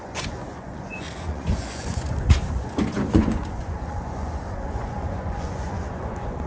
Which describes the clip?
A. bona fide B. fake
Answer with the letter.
B